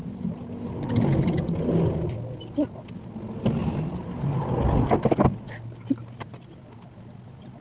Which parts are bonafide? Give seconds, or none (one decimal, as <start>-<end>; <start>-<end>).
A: 0.0-7.6